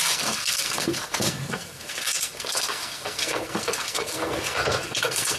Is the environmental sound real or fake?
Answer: fake